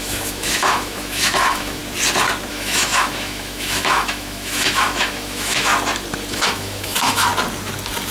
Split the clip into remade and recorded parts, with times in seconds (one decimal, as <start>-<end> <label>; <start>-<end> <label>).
0.0-1.8 remade; 1.8-2.5 recorded; 2.5-5.7 remade; 5.7-6.3 recorded; 6.3-7.3 remade; 7.3-8.1 recorded